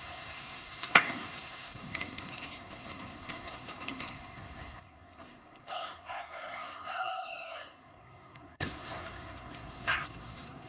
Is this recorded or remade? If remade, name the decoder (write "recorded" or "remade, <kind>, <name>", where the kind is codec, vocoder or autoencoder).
remade, codec, SNAC